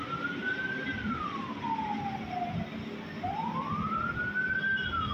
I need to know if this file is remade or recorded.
recorded